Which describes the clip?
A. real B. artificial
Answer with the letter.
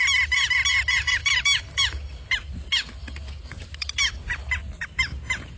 A